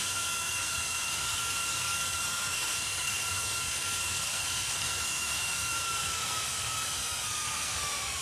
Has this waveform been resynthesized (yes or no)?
yes